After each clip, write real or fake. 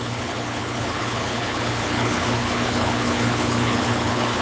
fake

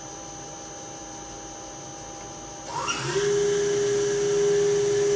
real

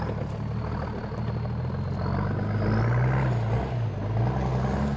real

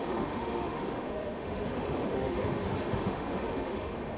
fake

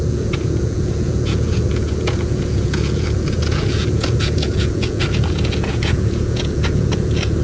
fake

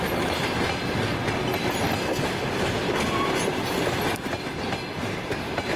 real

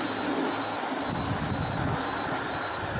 real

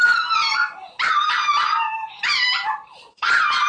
real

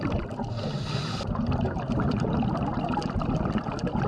real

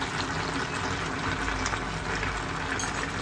real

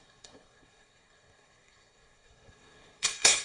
fake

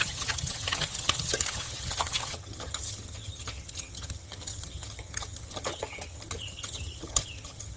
fake